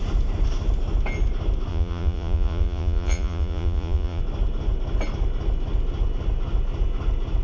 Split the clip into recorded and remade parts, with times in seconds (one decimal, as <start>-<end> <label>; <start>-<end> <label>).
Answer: 0.0-1.7 recorded; 1.7-4.2 remade; 4.2-7.4 recorded